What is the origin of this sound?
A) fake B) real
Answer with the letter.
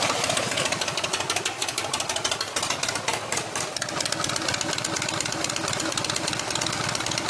B